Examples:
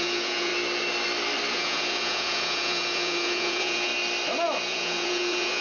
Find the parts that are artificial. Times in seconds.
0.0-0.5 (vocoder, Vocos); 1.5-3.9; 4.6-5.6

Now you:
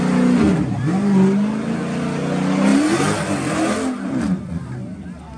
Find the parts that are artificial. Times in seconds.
none

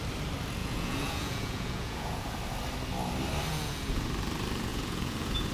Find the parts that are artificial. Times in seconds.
0.6-2.2 (vocoder, Vocos); 3.5-4.0; 4.7-5.5

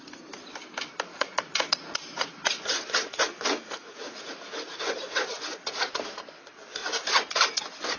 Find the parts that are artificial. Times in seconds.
1.1-5.9 (vocoder, Vocos); 6.8-7.6

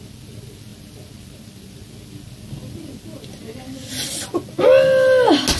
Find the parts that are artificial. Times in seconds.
none